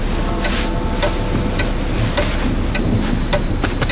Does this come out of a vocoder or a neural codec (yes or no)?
no